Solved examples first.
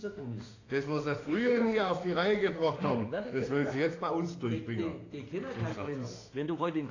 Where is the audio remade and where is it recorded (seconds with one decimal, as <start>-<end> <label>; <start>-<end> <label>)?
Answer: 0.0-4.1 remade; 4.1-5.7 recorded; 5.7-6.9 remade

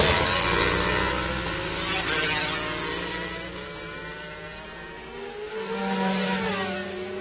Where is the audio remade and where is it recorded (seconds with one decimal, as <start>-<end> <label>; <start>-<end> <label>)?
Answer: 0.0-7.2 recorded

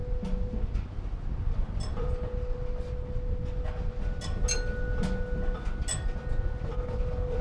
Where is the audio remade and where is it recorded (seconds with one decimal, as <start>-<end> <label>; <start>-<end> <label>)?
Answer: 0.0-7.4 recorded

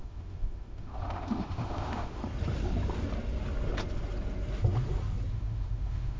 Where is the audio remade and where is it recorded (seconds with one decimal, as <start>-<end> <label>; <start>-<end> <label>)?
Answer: 0.0-2.2 remade; 2.2-5.3 recorded; 5.3-6.2 remade